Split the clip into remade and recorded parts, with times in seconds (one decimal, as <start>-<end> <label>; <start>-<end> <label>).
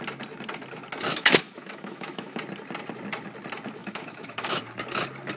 0.0-1.1 recorded; 1.1-2.4 remade; 2.4-3.8 recorded; 3.8-4.6 remade; 4.6-5.4 recorded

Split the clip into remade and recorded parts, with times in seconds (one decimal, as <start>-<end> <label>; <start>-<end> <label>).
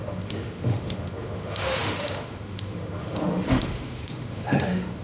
0.0-5.0 remade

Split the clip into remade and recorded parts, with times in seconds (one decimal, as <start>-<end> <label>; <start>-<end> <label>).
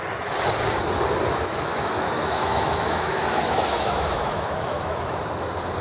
0.0-1.7 recorded; 1.7-5.2 remade; 5.2-5.8 recorded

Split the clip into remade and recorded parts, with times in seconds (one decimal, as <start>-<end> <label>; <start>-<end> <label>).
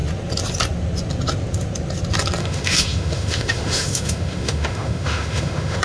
0.0-2.4 recorded; 2.4-5.8 remade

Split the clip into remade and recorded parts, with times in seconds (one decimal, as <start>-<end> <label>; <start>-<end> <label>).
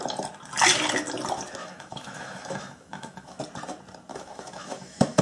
0.0-1.6 recorded; 1.6-3.4 remade; 3.4-4.1 recorded; 4.1-5.2 remade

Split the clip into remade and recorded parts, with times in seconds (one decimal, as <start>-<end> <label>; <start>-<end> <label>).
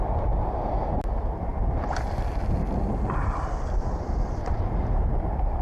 0.0-5.6 recorded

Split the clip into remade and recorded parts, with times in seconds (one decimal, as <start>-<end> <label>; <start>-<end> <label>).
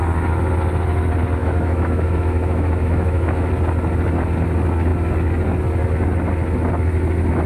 0.0-1.4 recorded; 1.4-3.5 remade; 3.5-7.5 recorded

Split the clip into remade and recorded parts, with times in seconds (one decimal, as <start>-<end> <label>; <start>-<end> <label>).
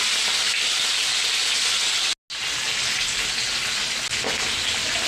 0.0-5.1 recorded